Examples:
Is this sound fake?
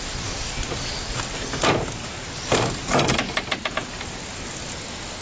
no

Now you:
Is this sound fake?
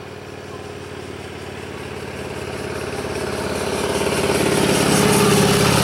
no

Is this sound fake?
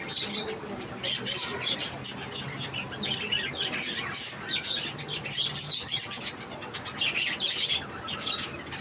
no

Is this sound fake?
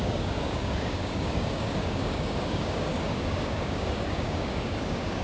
yes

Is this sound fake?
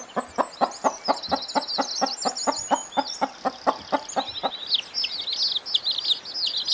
no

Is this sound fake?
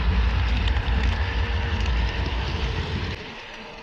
yes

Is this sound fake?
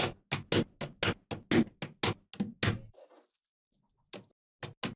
no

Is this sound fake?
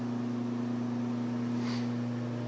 no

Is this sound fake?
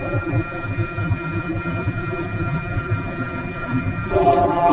yes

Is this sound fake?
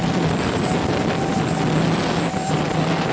no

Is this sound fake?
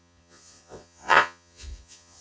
yes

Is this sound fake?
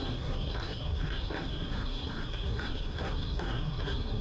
yes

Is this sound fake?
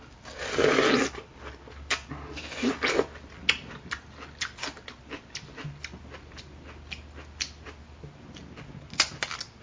no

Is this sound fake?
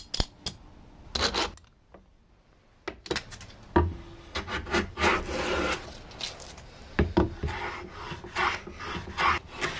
no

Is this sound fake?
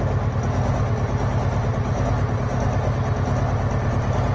no